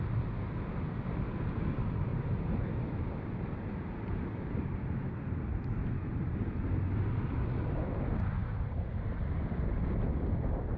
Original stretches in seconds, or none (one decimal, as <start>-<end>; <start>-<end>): 0.0-10.8